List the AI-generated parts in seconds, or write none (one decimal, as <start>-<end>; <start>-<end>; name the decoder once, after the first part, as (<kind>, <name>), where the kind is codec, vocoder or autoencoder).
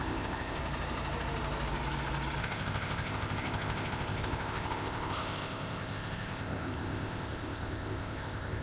0.0-0.6 (codec, ZipCodec); 2.4-8.6